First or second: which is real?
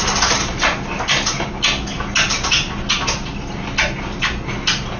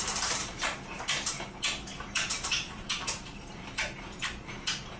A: first